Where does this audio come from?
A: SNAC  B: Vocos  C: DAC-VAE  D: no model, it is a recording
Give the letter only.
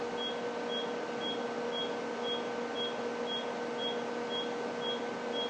D